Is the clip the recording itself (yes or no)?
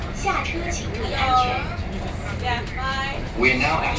yes